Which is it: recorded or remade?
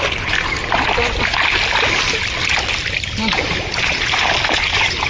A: recorded